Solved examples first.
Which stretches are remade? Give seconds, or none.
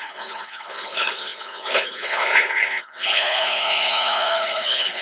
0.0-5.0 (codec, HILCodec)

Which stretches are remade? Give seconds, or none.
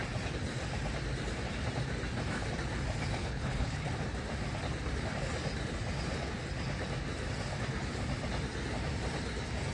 3.2-3.9 (codec, HILCodec)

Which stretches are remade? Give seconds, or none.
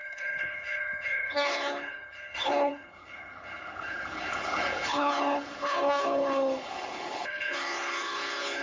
0.0-8.6 (codec, HILCodec)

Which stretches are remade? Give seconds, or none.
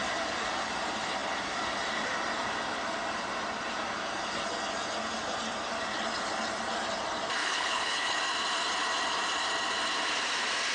7.4-8.2 (codec, HILCodec)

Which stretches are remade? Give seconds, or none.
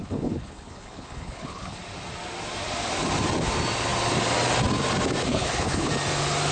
0.0-1.8 (codec, HILCodec); 5.3-5.9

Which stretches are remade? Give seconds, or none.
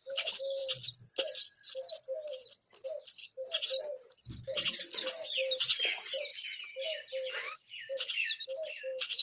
none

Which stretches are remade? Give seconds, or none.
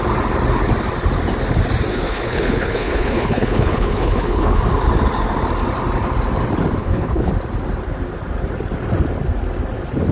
1.9-4.6 (codec, HILCodec); 6.8-7.3